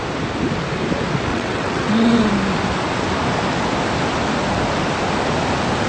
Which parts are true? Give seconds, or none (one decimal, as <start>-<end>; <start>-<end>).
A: 0.0-1.3; 2.3-5.9